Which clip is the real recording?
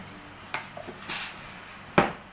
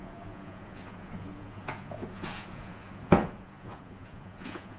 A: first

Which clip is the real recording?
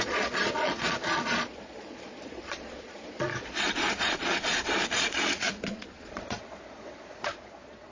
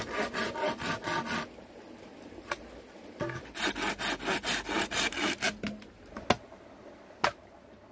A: second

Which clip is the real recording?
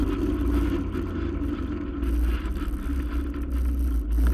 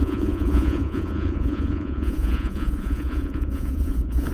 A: first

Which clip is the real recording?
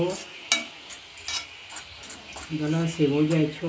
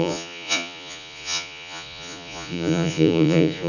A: first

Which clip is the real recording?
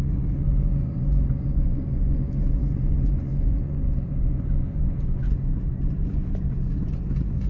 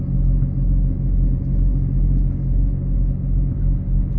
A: second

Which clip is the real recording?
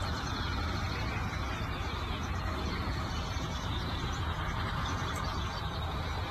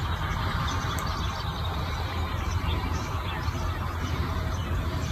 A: second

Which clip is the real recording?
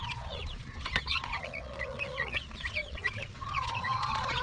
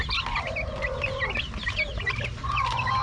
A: second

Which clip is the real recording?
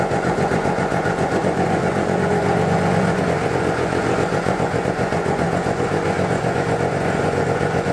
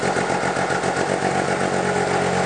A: second